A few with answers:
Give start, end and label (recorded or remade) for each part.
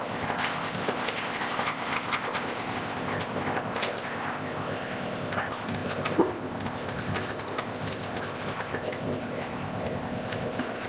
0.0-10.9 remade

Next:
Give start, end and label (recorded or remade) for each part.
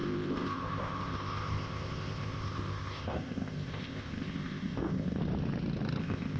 0.0-5.2 remade; 5.2-6.0 recorded; 6.0-6.4 remade